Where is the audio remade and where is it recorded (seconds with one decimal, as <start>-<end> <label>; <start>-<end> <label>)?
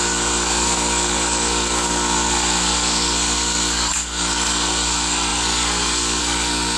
0.0-6.8 remade